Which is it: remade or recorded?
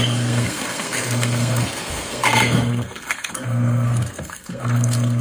remade